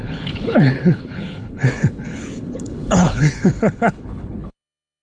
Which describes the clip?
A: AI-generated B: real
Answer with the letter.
A